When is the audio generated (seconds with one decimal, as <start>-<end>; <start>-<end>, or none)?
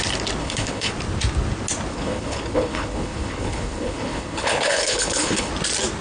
0.4-0.9; 1.9-5.5